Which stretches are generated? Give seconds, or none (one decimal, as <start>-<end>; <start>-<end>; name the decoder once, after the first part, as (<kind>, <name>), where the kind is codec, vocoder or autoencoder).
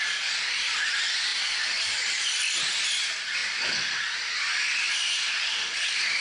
none